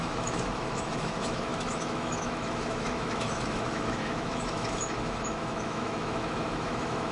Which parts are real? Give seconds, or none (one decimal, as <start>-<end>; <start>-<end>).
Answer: none